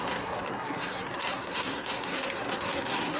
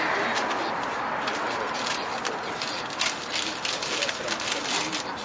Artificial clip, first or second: first